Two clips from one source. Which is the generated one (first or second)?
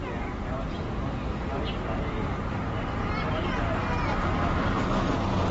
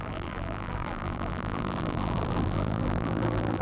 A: second